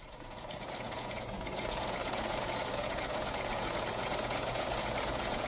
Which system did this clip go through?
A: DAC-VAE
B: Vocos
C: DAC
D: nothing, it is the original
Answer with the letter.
B